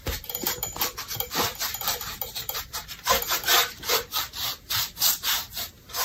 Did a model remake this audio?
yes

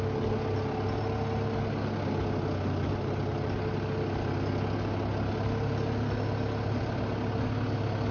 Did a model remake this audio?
no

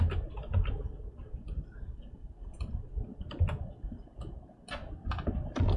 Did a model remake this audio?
no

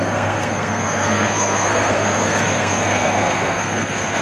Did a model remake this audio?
yes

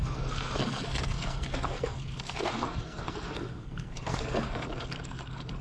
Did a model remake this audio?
yes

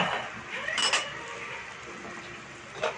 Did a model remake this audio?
no